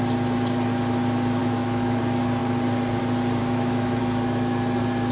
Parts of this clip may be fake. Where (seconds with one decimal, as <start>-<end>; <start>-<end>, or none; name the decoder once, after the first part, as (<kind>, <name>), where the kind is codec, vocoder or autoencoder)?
1.4-2.0 (autoencoder, DAC-VAE); 3.4-4.0